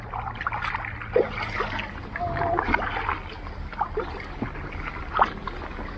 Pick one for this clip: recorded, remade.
recorded